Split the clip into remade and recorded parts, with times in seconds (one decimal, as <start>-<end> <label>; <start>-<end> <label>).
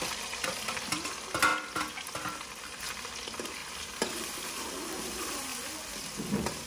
0.0-1.5 remade; 1.5-2.8 recorded; 2.8-5.5 remade; 5.5-6.3 recorded; 6.3-6.7 remade